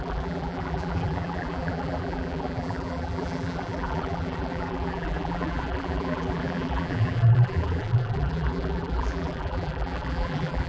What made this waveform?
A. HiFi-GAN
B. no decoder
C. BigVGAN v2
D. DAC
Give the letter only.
C